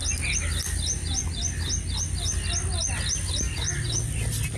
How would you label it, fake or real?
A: real